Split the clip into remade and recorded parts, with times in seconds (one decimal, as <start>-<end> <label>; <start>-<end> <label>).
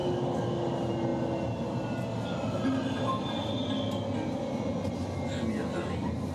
0.0-0.6 remade; 0.6-6.3 recorded